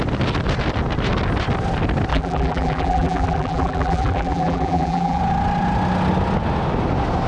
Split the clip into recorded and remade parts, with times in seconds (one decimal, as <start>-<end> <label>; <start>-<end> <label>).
0.0-2.1 recorded; 2.1-5.2 remade; 5.2-7.3 recorded